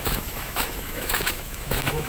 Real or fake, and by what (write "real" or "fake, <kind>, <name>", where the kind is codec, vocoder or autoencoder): fake, autoencoder, DAC-VAE